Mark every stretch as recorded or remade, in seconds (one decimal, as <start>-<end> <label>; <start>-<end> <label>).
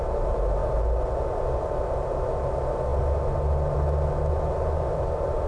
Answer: 0.0-5.5 recorded